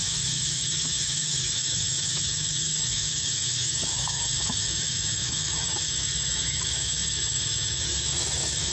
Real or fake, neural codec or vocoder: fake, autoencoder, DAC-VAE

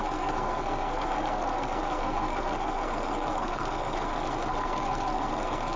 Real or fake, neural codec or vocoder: fake, codec, SNAC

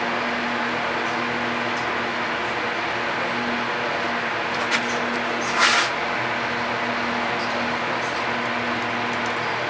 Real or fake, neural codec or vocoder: real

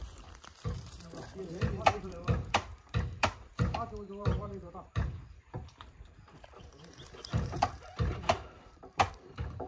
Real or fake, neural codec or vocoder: fake, vocoder, BigVGAN v2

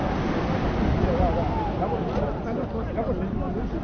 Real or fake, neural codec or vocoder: real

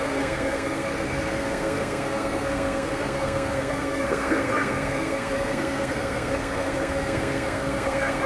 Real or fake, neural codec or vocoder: fake, codec, SNAC